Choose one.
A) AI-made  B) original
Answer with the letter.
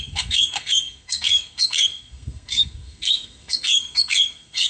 A